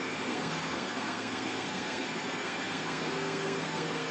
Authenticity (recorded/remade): remade